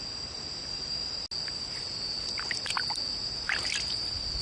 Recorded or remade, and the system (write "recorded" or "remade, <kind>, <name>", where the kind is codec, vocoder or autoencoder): recorded